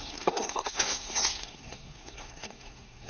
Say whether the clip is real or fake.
fake